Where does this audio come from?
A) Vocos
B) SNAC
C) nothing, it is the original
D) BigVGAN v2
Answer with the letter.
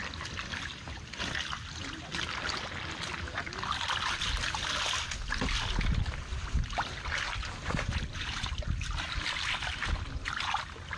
C